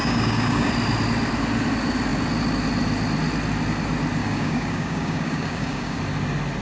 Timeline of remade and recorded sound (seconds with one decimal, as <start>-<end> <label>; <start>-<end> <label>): 0.0-0.7 remade; 0.7-4.2 recorded; 4.2-6.0 remade; 6.0-6.6 recorded